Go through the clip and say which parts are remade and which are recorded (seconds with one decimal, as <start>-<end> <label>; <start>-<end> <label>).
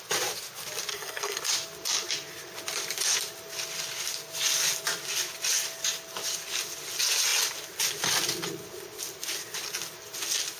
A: 0.0-0.9 recorded; 0.9-1.4 remade; 1.4-10.6 recorded